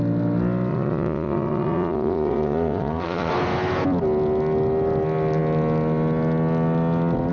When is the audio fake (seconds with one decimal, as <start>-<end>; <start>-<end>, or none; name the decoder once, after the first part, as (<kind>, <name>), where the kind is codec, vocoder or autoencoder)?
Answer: 0.7-3.3 (vocoder, Vocos)